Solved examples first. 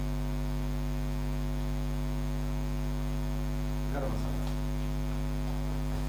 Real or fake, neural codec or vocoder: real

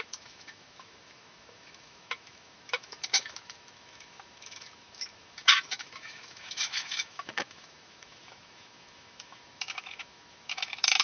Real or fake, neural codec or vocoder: fake, autoencoder, DAC-VAE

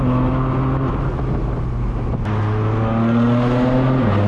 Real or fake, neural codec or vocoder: real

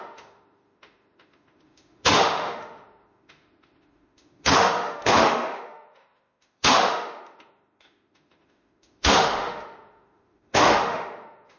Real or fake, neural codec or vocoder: fake, autoencoder, DAC-VAE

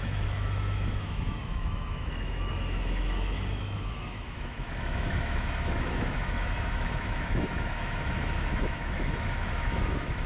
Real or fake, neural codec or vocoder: fake, autoencoder, DAC-VAE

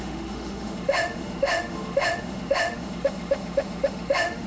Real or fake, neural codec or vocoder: fake, autoencoder, DAC-VAE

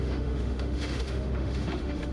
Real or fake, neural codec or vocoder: fake, autoencoder, DAC-VAE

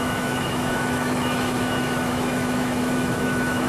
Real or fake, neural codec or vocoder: fake, autoencoder, DAC-VAE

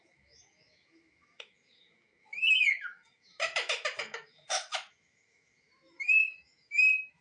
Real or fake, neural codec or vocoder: fake, autoencoder, DAC-VAE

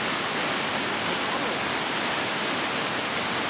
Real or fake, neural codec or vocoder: real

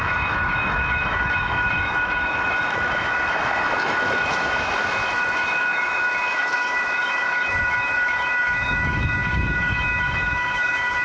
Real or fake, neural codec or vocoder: fake, autoencoder, DAC-VAE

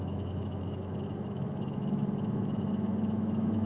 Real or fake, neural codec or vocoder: fake, autoencoder, DAC-VAE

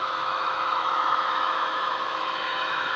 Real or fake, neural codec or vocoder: fake, autoencoder, DAC-VAE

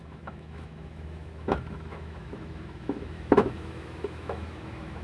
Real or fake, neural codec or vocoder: fake, autoencoder, DAC-VAE